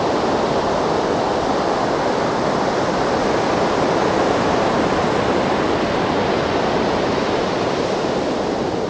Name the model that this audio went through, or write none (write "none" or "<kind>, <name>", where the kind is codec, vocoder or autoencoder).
vocoder, BigVGAN v2